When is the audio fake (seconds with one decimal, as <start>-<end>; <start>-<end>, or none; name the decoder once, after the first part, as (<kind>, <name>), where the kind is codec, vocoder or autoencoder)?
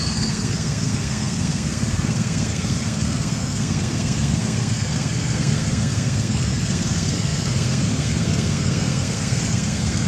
0.0-10.1 (codec, SNAC)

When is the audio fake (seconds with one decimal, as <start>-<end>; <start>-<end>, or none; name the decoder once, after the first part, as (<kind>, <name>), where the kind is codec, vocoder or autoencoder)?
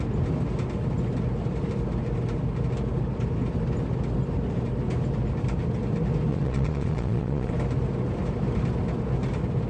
6.3-7.5 (vocoder, Vocos)